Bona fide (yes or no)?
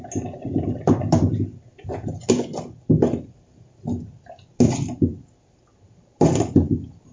yes